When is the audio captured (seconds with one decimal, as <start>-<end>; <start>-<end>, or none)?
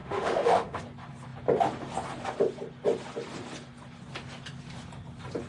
0.8-5.5